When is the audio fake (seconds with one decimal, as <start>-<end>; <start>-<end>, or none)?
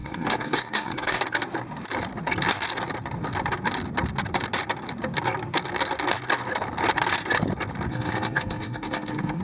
0.0-1.2; 7.9-9.4